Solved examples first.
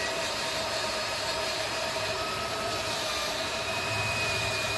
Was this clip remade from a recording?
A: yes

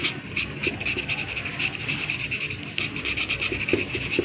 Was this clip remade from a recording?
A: no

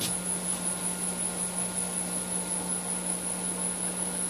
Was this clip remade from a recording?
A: no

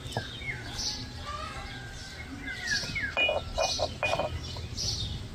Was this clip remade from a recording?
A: no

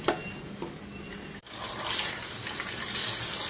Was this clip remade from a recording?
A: no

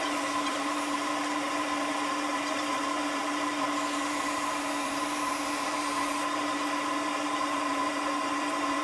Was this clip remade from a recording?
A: yes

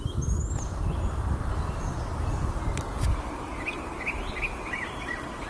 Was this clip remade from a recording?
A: no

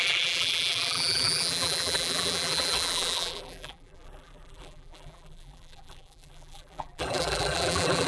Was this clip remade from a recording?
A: yes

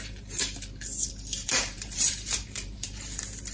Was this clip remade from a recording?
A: yes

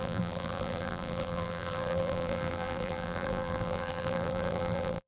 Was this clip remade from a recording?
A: yes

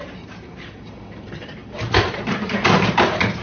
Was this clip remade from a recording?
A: yes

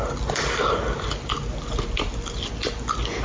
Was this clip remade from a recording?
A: no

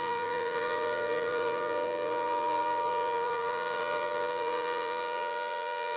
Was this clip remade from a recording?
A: yes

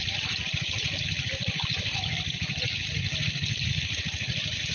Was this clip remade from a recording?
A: yes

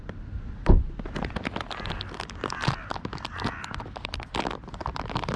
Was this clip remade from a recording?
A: no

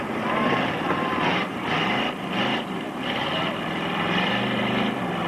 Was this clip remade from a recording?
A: yes